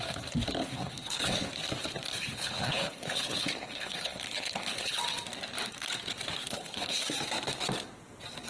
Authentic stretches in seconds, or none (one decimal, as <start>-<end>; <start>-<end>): 0.0-0.6; 1.5-2.1; 5.0-6.4; 7.0-8.5